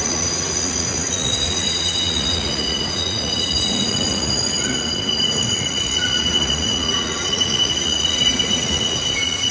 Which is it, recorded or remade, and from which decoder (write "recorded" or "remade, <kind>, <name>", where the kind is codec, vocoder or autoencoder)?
remade, vocoder, Vocos